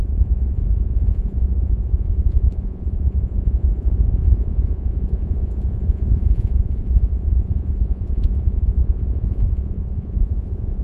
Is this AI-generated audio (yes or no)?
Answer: yes